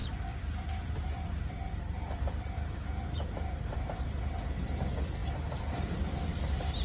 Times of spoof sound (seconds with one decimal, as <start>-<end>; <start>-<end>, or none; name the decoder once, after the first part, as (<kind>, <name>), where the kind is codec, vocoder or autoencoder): 0.0-4.1 (vocoder, BigVGAN v2)